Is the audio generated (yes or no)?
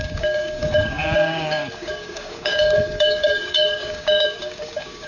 yes